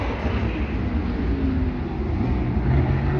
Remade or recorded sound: recorded